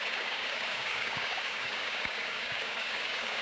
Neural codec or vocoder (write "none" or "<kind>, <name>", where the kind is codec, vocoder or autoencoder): codec, DAC